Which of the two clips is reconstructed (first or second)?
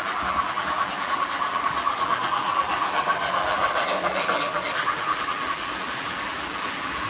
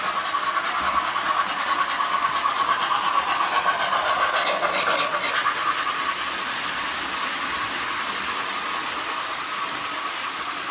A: first